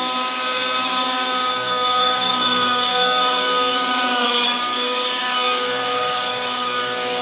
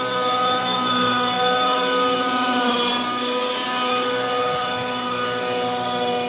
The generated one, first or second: first